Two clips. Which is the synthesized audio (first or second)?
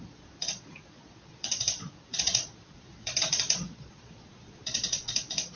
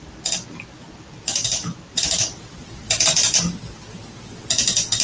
first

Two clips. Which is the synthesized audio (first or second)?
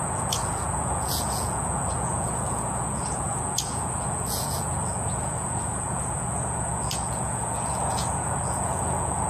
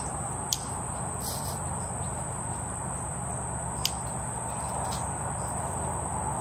first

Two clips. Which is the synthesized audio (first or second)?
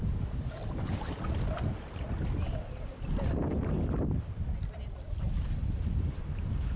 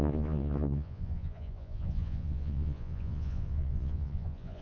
second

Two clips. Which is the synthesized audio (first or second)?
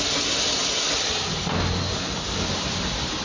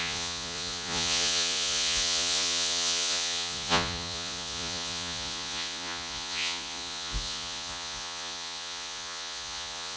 second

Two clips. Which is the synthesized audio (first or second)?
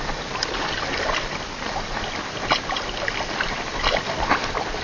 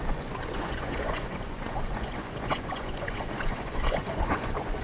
second